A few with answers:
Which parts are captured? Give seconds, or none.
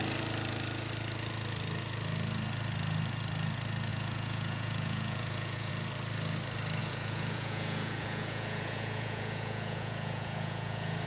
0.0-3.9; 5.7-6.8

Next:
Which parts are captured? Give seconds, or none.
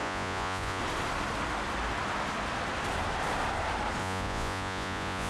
0.8-4.0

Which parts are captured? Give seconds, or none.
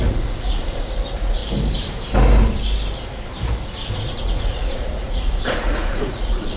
1.4-4.0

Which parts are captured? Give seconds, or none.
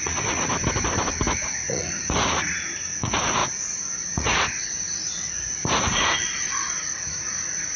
0.5-1.3